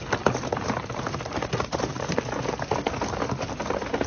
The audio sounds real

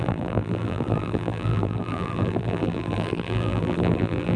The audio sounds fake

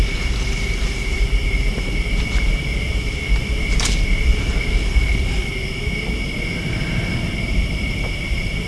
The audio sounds fake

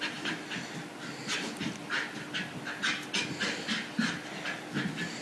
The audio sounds real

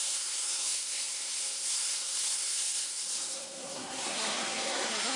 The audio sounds fake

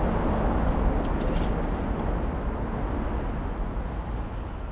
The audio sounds real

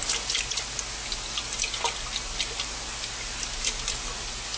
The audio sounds real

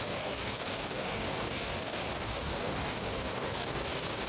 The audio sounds fake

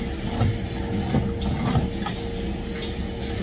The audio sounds real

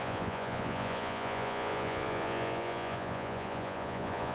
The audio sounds fake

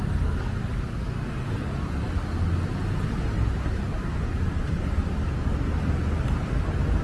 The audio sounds real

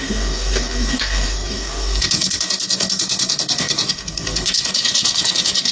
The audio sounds fake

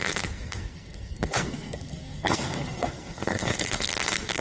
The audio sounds fake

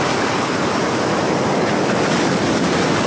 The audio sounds real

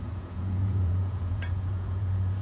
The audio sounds fake